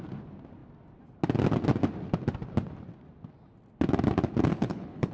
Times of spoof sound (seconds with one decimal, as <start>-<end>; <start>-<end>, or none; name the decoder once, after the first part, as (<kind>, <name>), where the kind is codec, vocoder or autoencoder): 4.5-5.1 (codec, HILCodec)